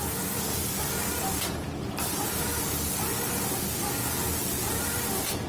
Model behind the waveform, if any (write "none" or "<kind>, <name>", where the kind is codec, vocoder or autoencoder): none